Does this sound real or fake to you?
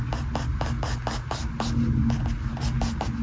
real